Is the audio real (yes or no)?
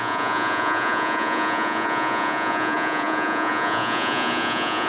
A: no